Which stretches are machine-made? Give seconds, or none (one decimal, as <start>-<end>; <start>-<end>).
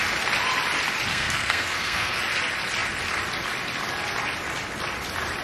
1.1-2.2